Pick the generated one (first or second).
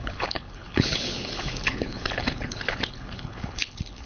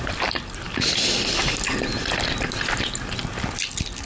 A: first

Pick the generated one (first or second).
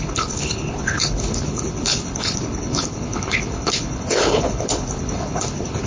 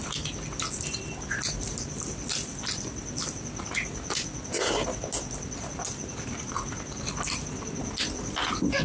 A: first